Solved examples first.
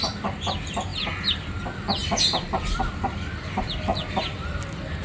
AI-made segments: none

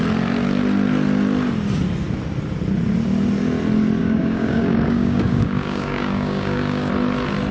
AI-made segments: 4.0-6.9 (codec, DAC)

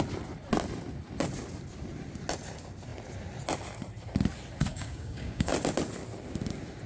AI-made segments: 4.7-5.5 (codec, DAC)

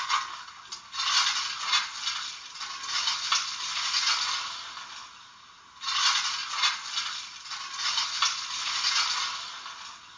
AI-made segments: none